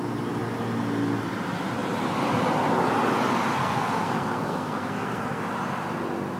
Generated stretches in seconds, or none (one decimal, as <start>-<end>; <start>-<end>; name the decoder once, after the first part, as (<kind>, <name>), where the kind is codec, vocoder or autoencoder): 3.6-5.4 (codec, SNAC)